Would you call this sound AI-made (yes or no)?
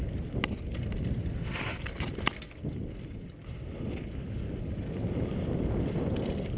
no